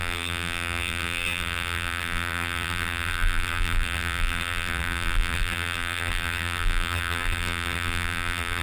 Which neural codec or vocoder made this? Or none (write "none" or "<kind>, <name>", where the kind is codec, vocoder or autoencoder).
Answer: vocoder, BigVGAN v2